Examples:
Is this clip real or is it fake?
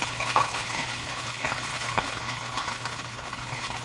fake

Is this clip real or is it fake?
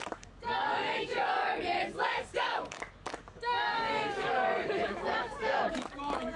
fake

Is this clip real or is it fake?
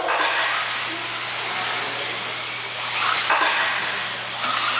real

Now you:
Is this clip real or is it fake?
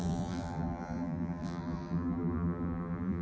fake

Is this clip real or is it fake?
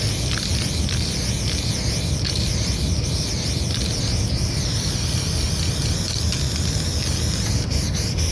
real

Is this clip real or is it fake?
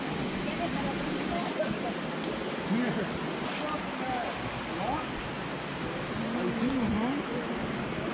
real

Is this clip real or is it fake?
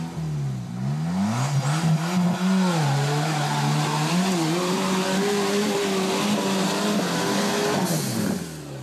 real